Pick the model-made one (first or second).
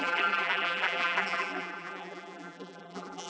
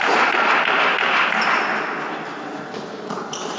first